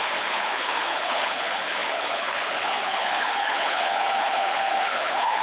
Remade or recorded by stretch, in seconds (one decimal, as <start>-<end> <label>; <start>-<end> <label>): 0.0-5.4 remade